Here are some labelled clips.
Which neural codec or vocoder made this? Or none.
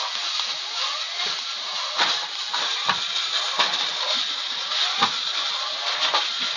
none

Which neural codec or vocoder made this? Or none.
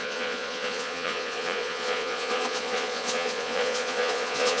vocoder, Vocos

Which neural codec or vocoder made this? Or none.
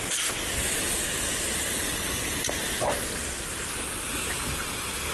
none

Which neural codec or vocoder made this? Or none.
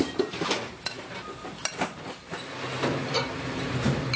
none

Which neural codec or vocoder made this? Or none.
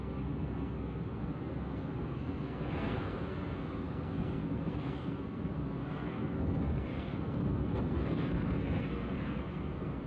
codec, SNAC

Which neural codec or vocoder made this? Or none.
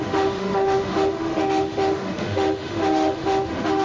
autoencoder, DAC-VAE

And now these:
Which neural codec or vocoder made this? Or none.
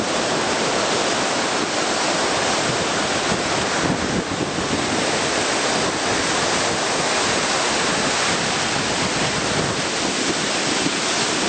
none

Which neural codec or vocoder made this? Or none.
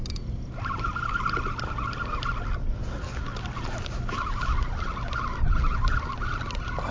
none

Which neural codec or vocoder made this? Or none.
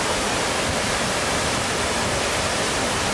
none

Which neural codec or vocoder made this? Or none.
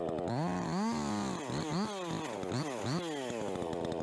none